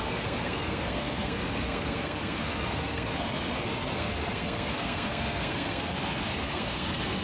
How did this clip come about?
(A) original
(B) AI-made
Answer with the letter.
B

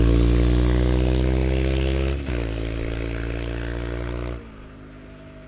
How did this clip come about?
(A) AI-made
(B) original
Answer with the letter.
B